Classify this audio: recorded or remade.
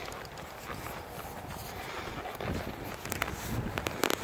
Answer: remade